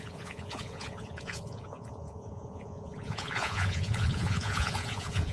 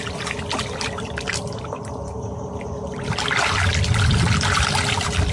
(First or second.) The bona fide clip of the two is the second